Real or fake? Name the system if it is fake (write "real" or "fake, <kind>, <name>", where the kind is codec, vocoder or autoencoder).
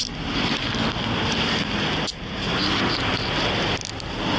real